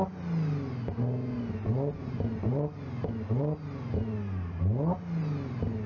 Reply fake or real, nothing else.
real